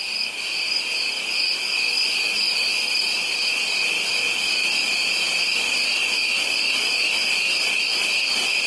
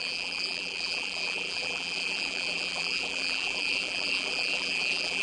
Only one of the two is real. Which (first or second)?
first